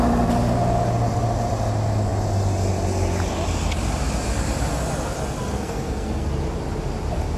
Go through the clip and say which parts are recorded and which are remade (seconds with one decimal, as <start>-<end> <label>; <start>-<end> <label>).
0.0-5.5 recorded; 5.5-6.3 remade; 6.3-7.4 recorded

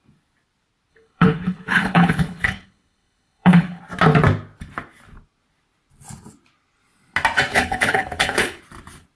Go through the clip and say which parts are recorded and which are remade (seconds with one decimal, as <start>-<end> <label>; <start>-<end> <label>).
0.0-0.9 recorded; 0.9-3.8 remade; 3.8-7.5 recorded; 7.5-8.6 remade; 8.6-9.2 recorded